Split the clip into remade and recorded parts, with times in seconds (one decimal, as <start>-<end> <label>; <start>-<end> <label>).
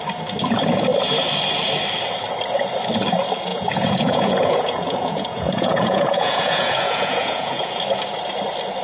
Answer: 0.0-3.5 recorded; 3.5-7.8 remade; 7.8-8.8 recorded